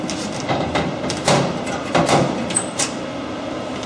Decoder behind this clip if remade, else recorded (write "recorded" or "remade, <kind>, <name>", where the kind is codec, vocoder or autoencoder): recorded